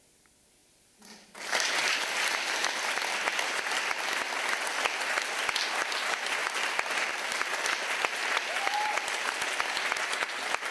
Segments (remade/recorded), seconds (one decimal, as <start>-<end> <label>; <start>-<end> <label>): 0.0-10.7 recorded